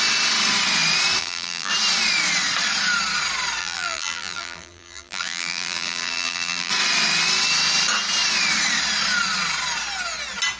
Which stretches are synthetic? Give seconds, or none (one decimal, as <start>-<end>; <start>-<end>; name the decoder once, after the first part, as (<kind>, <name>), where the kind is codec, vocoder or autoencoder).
1.2-1.7 (vocoder, BigVGAN v2); 3.6-6.7